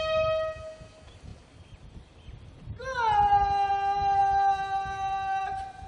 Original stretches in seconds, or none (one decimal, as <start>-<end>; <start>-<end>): 0.0-5.9